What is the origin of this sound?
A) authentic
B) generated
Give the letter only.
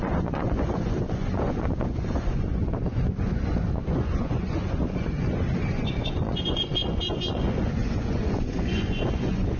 B